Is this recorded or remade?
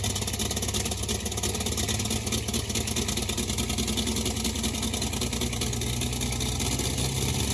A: recorded